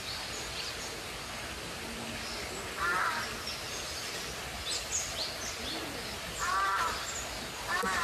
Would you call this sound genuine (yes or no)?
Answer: yes